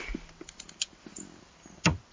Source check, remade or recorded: recorded